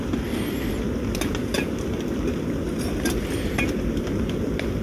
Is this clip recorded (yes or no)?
yes